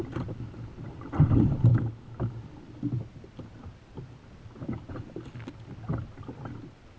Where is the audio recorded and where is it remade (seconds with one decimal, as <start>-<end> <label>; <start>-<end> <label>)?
0.0-1.7 recorded; 1.7-2.3 remade; 2.3-7.0 recorded